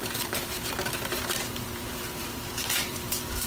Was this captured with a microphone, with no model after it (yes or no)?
no